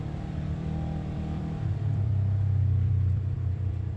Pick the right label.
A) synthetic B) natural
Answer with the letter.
A